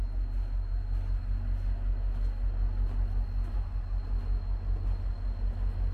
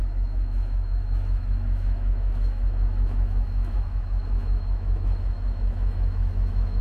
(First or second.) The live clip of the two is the first